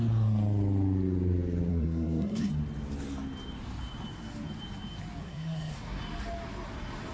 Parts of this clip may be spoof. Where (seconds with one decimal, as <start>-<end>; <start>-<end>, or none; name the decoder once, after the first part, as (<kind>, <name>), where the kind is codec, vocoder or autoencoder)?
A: 1.7-2.5 (codec, SNAC); 5.2-6.0